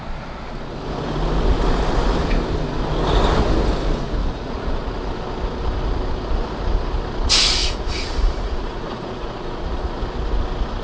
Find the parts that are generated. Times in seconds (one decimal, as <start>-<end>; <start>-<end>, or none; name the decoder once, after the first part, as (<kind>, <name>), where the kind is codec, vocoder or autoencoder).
4.2-4.8 (vocoder, Vocos); 7.6-10.0